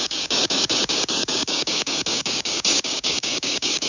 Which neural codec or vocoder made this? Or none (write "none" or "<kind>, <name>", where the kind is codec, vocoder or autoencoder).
codec, DAC